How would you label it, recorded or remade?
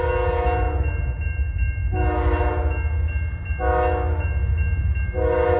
recorded